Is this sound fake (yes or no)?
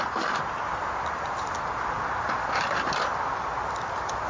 no